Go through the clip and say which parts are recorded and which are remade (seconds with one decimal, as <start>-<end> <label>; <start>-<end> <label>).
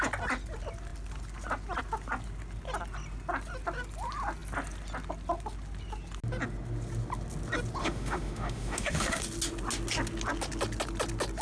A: 0.0-7.8 recorded; 7.8-9.2 remade; 9.2-11.4 recorded